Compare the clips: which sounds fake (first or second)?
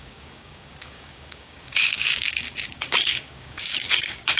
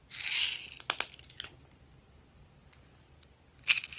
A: first